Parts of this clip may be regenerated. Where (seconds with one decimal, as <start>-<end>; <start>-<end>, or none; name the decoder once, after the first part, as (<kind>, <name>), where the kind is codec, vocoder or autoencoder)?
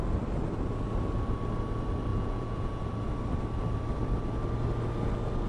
2.1-2.8 (vocoder, Vocos)